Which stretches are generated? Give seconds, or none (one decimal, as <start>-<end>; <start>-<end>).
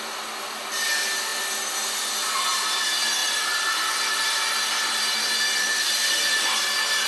3.2-6.6